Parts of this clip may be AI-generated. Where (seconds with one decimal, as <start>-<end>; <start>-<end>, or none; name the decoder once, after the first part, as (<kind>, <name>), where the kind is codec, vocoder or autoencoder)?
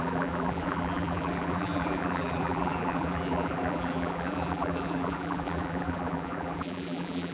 0.0-7.3 (vocoder, BigVGAN v2)